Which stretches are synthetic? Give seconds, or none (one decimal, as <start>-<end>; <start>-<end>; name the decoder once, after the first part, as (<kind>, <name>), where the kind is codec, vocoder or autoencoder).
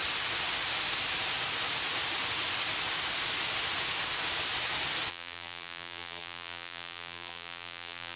5.1-8.2 (vocoder, BigVGAN v2)